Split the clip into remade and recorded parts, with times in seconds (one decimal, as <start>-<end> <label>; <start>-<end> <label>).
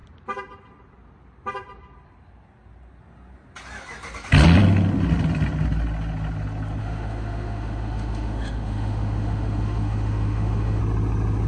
0.0-6.8 recorded; 6.8-10.8 remade; 10.8-11.5 recorded